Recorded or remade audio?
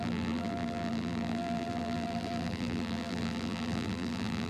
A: remade